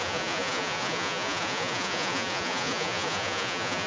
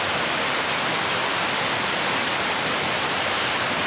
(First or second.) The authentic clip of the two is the second